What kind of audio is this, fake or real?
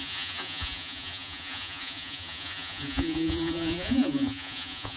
fake